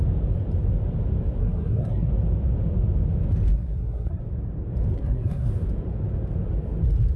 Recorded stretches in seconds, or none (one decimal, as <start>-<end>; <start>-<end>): 0.0-1.4; 2.1-3.5; 4.2-4.9; 5.5-7.2